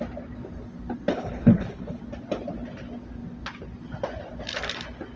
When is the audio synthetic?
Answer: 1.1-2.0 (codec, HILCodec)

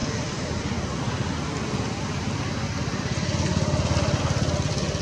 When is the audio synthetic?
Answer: 1.2-4.2 (vocoder, BigVGAN v2)

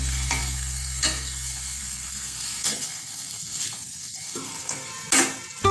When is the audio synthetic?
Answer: 0.0-4.9 (codec, SNAC)

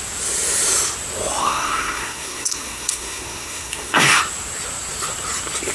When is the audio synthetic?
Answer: 1.4-4.2 (codec, SNAC)

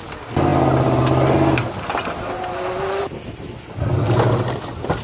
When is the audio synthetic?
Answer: none

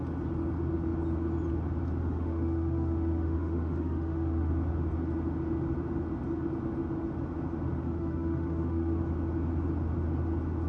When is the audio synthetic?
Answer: 2.0-4.5 (autoencoder, DAC-VAE); 7.8-9.0

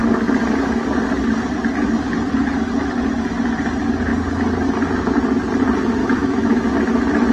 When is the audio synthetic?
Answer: 6.0-6.7 (autoencoder, DAC-VAE)

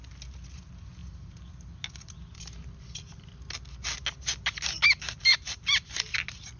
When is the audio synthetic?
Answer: 1.0-1.5 (vocoder, BigVGAN v2); 5.3-6.0